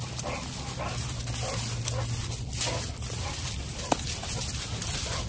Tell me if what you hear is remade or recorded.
recorded